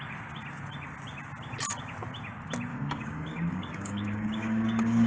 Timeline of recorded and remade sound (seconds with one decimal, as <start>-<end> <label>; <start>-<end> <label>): 0.0-2.7 recorded; 2.7-5.1 remade